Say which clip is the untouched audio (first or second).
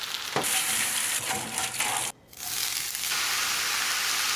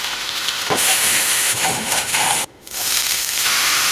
first